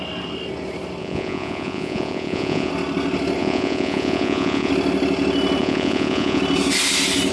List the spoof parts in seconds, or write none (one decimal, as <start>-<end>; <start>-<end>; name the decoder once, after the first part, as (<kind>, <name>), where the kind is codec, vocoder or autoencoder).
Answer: 1.0-2.7 (vocoder, Vocos); 3.4-4.7; 5.6-6.4